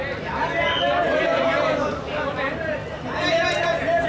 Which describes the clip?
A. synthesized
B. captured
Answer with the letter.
B